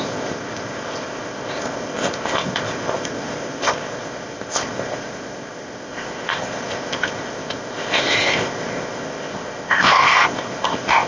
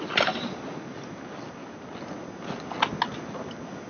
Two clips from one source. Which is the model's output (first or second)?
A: first